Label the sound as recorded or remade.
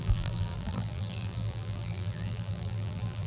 remade